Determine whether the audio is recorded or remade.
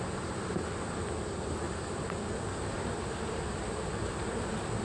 recorded